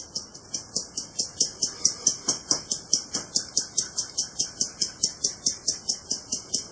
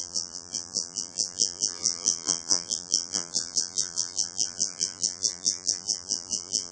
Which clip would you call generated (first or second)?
second